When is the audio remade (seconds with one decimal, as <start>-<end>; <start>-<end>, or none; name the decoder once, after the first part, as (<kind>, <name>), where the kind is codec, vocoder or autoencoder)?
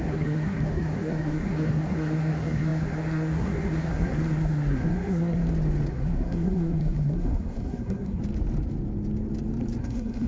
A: 0.0-5.4 (codec, SNAC); 5.9-8.2; 9.8-10.3